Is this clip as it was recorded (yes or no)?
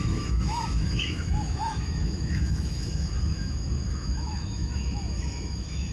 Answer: no